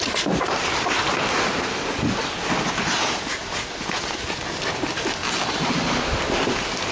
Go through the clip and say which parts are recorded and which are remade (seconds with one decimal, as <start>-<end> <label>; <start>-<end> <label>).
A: 0.0-6.9 recorded